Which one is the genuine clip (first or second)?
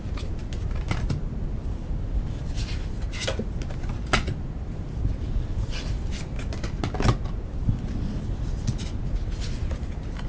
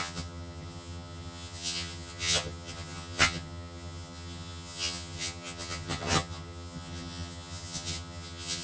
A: first